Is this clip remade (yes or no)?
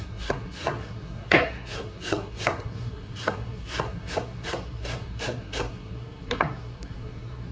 yes